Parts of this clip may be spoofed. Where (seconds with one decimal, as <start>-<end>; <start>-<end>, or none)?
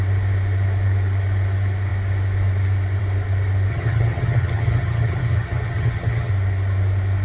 3.7-6.3